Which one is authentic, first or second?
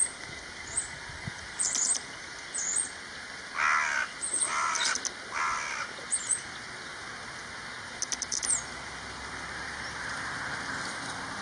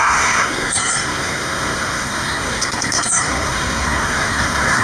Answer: first